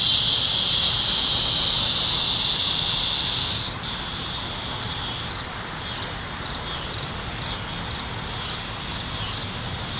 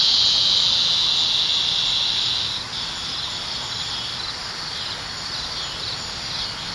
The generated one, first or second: first